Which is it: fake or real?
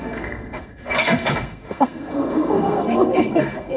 fake